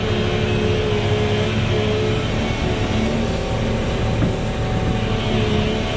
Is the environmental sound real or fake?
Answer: real